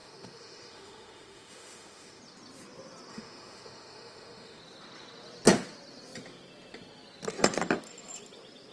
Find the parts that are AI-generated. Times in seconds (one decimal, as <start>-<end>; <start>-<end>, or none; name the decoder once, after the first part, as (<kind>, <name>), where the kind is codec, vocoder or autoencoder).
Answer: 0.0-2.2 (autoencoder, DAC-VAE); 3.1-4.6